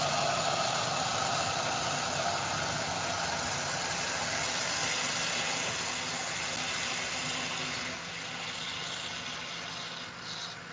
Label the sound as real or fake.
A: real